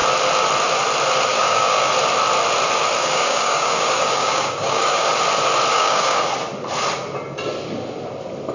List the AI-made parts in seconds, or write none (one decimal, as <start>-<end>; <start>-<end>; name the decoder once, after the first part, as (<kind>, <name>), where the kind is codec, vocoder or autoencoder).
1.3-1.9 (codec, DAC); 3.0-5.1; 5.7-6.3